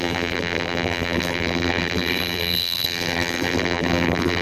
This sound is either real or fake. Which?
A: fake